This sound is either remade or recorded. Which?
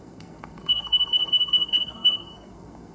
remade